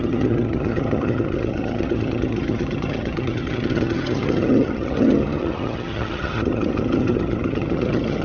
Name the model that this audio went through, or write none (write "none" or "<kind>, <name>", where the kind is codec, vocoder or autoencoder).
vocoder, HiFi-GAN